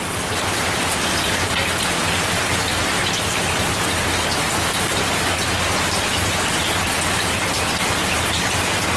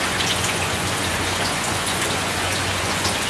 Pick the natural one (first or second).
first